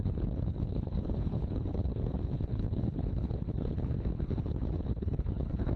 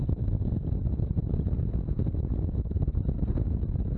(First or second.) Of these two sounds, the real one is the second